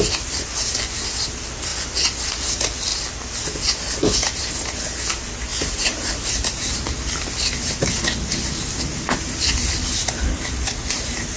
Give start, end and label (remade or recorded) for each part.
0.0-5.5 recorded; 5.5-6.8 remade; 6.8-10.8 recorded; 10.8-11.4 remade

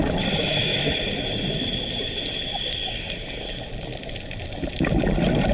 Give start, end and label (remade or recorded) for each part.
0.0-5.5 recorded

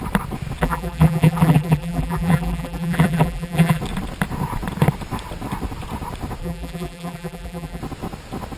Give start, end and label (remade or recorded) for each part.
0.0-0.6 recorded; 0.6-3.8 remade; 3.8-6.4 recorded; 6.4-7.8 remade; 7.8-8.6 recorded

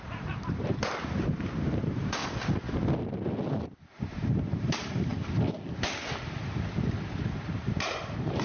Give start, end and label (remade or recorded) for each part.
0.0-0.8 remade; 0.8-1.7 recorded; 1.7-2.2 remade; 2.2-3.9 recorded; 3.9-5.1 remade; 5.1-7.5 recorded; 7.5-8.4 remade